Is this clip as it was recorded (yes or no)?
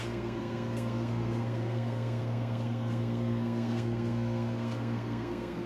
no